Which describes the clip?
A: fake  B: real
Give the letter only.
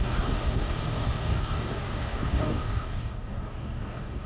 A